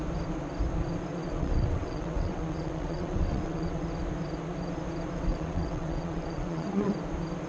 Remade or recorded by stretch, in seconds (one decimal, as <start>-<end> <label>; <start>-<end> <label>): 0.0-1.2 recorded; 1.2-3.8 remade; 3.8-5.3 recorded; 5.3-6.9 remade; 6.9-7.5 recorded